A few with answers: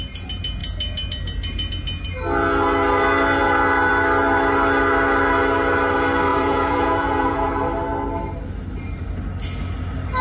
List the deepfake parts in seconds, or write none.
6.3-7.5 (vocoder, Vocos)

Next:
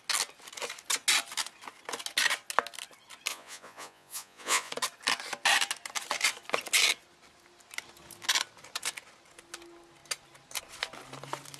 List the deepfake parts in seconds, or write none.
3.3-4.7 (vocoder, Vocos)

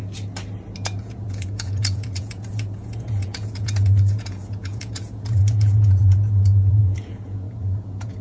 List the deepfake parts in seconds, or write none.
1.0-8.2 (vocoder, Vocos)

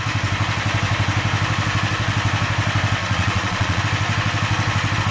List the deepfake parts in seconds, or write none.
3.0-3.8 (vocoder, Vocos)